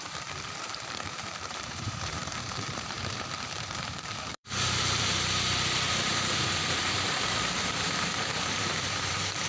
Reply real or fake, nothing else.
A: fake